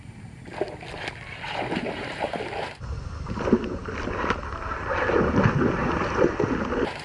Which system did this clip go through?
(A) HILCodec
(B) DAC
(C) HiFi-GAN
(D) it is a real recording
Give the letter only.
D